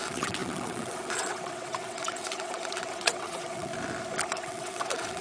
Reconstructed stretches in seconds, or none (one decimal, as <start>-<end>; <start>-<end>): 0.0-3.7; 4.3-5.2